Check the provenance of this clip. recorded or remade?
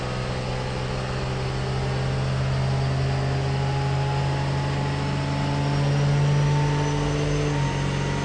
recorded